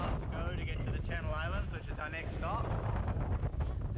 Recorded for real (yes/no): yes